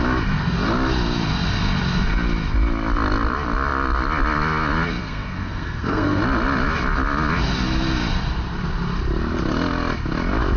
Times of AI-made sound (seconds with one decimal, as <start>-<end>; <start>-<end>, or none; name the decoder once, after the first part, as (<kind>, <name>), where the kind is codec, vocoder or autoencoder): 5.0-6.2 (codec, SNAC)